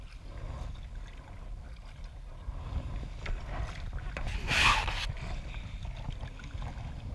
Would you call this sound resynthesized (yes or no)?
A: no